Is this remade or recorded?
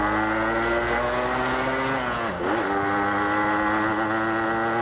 recorded